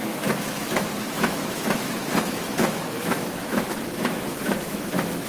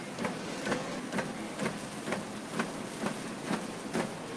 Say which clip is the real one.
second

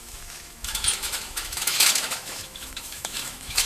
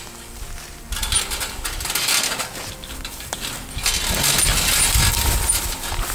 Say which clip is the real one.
second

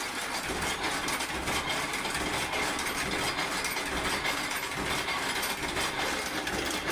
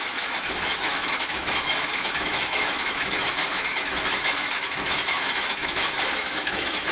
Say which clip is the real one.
first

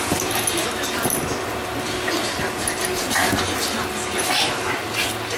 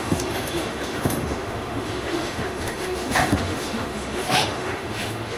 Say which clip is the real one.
first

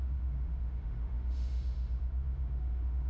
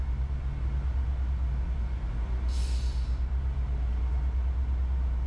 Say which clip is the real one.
second